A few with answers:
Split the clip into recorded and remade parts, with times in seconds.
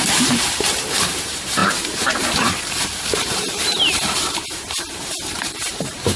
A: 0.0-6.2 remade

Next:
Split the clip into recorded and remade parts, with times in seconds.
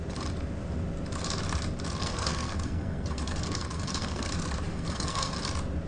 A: 0.0-2.0 recorded; 2.0-4.3 remade; 4.3-4.7 recorded; 4.7-5.3 remade; 5.3-5.9 recorded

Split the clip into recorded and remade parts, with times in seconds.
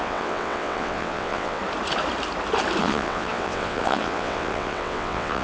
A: 0.0-1.6 remade; 1.6-2.8 recorded; 2.8-5.4 remade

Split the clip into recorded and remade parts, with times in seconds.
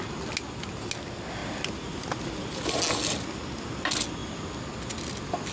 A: 0.0-5.5 recorded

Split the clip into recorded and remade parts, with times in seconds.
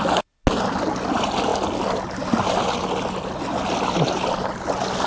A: 0.0-5.1 recorded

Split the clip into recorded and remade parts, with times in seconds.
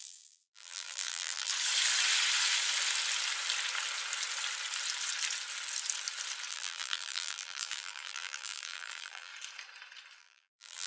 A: 0.0-1.5 remade; 1.5-6.5 recorded; 6.5-9.3 remade; 9.3-10.2 recorded; 10.2-10.9 remade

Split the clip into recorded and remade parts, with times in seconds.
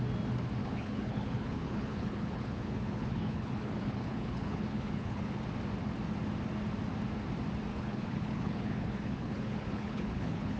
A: 0.0-0.6 recorded; 0.6-5.4 remade; 5.4-7.7 recorded; 7.7-10.6 remade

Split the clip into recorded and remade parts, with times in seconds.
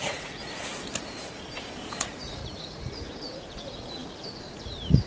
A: 0.0-0.4 remade; 0.4-1.9 recorded; 1.9-5.1 remade